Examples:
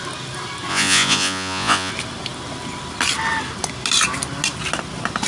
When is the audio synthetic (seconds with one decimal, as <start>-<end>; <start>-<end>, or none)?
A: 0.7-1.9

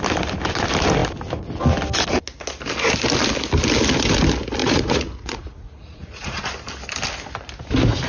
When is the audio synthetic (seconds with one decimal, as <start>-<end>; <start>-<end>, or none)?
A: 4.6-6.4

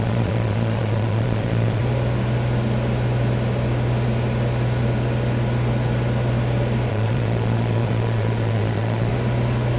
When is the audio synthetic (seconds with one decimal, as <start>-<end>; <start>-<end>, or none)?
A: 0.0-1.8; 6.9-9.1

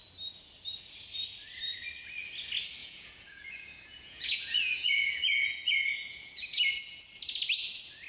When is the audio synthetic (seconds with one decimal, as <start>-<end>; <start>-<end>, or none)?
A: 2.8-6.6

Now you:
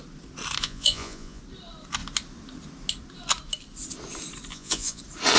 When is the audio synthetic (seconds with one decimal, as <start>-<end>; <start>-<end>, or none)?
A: 0.6-1.4; 4.5-5.0